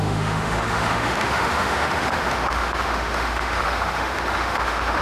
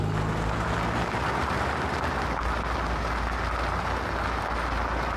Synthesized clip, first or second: first